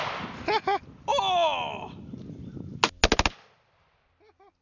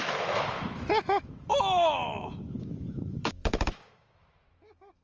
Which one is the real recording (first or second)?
first